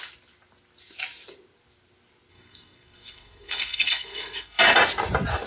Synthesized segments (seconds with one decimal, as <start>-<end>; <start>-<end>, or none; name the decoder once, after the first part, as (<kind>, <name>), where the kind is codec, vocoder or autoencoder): 2.3-4.6 (codec, SNAC)